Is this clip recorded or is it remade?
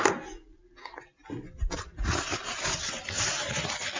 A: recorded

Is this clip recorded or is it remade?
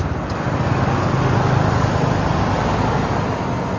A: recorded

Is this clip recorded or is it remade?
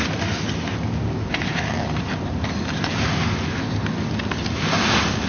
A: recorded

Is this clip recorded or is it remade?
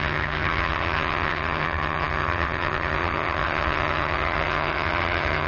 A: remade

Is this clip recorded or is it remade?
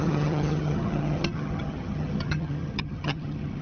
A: remade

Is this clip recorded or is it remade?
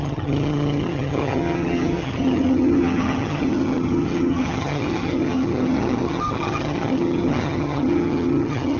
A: remade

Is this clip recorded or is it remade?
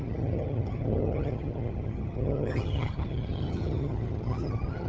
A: remade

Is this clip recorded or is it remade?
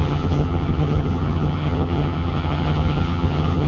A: remade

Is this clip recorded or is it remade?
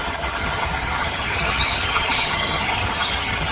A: remade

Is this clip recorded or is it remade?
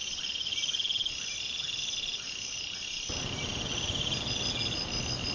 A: recorded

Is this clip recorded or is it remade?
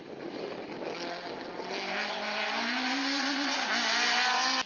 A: recorded